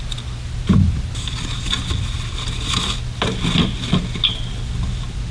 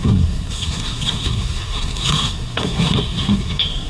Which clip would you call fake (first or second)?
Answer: second